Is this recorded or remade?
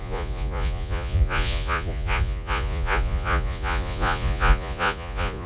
remade